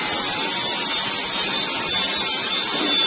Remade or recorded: recorded